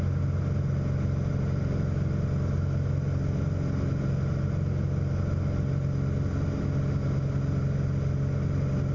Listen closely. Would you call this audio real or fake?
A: real